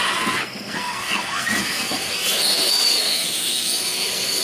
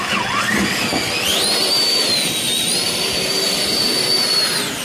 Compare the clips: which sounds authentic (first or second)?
second